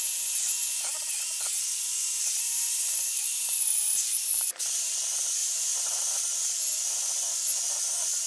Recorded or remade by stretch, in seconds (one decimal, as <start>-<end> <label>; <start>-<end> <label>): 0.0-1.8 recorded; 1.8-4.9 remade; 4.9-5.4 recorded; 5.4-6.2 remade; 6.2-8.3 recorded